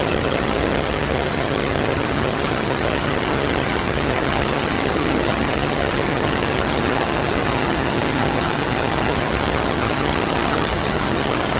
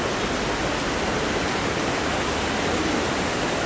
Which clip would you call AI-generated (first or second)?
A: first